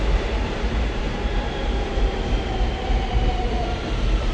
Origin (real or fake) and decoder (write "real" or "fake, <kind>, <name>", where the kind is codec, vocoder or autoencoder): fake, vocoder, BigVGAN v2